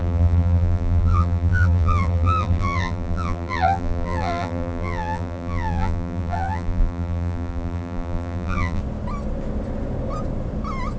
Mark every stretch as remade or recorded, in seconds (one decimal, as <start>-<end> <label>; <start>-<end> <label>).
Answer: 0.0-8.8 remade; 8.8-11.0 recorded